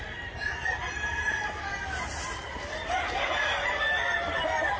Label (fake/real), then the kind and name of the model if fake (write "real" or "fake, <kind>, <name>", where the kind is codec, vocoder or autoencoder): real